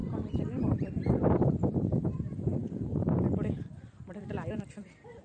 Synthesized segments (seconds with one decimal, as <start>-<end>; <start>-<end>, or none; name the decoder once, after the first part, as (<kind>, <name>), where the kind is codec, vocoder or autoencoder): 0.0-2.2 (vocoder, BigVGAN v2); 2.6-5.2